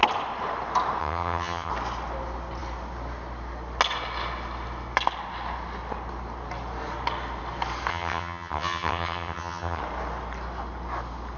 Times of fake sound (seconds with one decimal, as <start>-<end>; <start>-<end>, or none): 1.0-1.7; 7.9-9.8